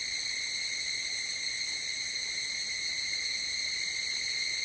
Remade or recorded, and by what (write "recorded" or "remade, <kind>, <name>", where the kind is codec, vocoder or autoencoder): recorded